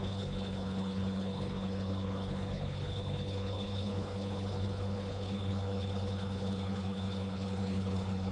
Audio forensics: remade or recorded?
remade